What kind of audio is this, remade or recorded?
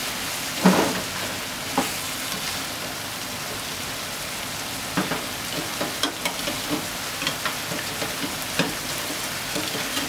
recorded